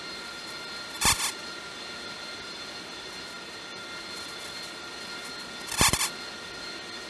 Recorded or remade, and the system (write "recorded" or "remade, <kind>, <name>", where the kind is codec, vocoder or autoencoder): recorded